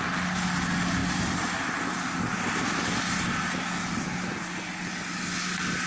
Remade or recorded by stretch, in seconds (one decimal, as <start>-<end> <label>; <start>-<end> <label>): 0.0-5.9 recorded